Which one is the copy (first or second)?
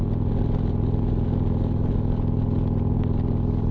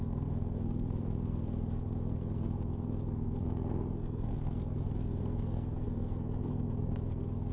second